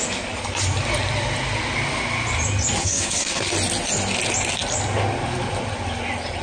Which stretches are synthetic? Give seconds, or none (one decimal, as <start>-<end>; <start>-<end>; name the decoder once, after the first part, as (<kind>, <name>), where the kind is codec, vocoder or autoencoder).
2.8-3.5 (codec, SNAC)